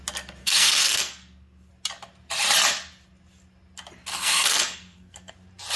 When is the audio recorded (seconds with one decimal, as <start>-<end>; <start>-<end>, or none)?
0.0-0.4; 1.7-4.1; 5.3-5.8